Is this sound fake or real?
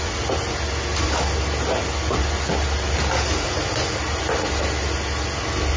real